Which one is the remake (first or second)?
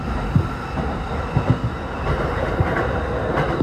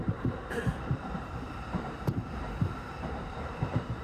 second